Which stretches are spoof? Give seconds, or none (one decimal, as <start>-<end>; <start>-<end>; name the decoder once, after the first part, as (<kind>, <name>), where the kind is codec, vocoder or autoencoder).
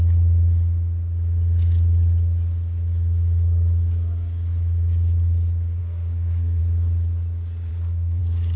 5.8-6.6 (codec, SNAC); 7.7-8.2